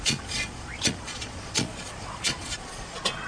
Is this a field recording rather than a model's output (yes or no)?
no